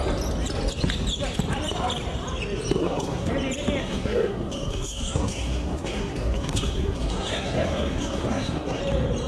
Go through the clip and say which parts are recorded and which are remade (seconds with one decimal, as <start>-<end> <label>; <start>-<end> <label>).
0.0-2.8 recorded; 2.8-3.3 remade; 3.3-3.8 recorded; 3.8-8.8 remade; 8.8-9.3 recorded